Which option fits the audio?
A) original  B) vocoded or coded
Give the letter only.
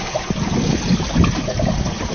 A